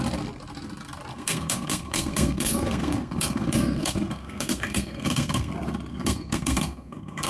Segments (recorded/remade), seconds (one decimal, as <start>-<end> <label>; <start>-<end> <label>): 0.0-1.1 recorded; 1.1-5.5 remade; 5.5-5.9 recorded; 5.9-7.3 remade